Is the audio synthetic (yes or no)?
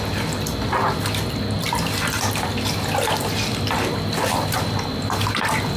no